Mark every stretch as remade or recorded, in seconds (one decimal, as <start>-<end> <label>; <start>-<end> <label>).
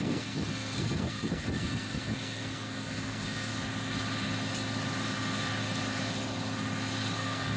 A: 0.0-3.5 remade; 3.5-7.1 recorded; 7.1-7.6 remade